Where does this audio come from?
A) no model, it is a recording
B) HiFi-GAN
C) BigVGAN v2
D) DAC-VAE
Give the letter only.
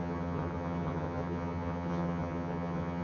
B